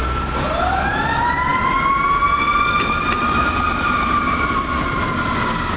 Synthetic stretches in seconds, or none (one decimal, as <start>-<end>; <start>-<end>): none